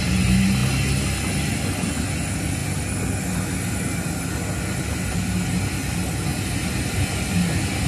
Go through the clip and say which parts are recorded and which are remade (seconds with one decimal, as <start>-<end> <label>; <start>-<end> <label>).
0.0-7.9 recorded